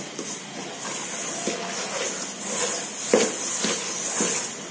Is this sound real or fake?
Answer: real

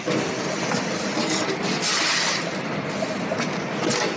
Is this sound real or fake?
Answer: real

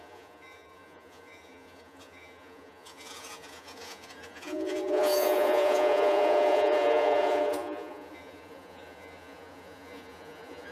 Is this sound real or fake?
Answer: fake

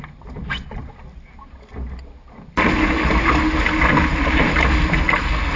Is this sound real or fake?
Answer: real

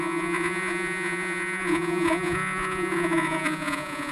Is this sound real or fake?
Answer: fake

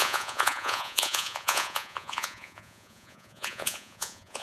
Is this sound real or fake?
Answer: fake